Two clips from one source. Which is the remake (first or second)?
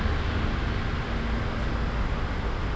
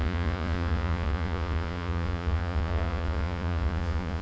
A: second